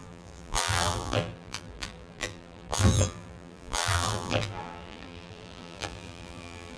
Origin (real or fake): fake